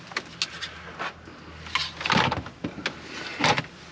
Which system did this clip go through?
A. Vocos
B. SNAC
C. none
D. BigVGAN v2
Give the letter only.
C